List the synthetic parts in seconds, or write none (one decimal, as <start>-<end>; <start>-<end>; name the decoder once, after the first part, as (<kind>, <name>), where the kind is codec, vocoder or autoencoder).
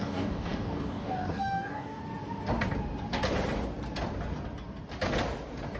0.0-2.0 (codec, DAC)